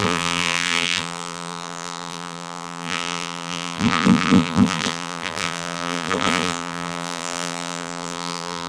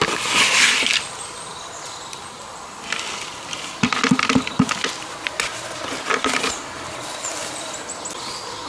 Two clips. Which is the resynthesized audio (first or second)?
first